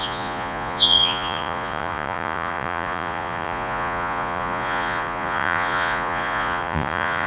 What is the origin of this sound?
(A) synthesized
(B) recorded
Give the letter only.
A